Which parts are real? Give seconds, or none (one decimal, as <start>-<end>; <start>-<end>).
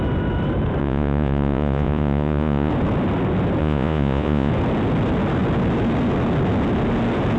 0.0-0.8; 2.7-3.6; 4.5-7.4